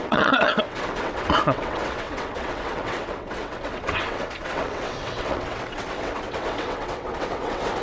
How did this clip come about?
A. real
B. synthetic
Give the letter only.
B